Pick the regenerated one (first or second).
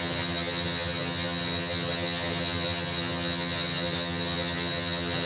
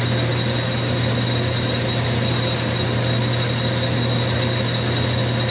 first